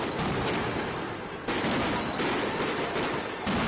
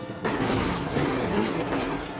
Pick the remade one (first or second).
second